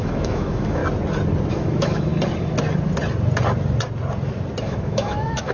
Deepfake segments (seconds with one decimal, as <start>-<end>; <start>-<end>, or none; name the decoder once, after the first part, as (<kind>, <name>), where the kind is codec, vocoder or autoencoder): 0.0-0.8 (autoencoder, DAC-VAE); 1.5-2.1; 4.6-5.5